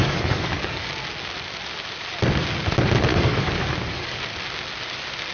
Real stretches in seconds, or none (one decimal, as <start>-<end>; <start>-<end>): 0.9-3.1; 4.2-5.3